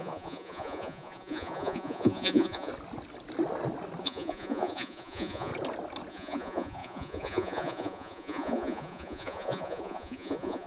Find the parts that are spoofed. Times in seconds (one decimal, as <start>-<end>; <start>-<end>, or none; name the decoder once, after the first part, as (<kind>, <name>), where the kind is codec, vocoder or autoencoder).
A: 0.0-2.7 (vocoder, Vocos); 4.0-5.5; 6.1-10.7